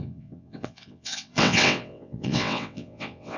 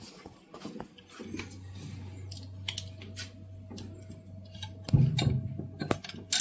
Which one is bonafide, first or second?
second